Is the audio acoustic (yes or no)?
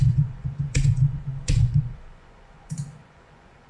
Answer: no